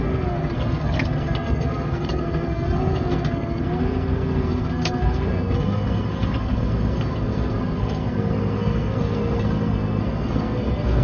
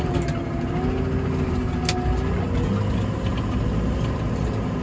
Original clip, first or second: second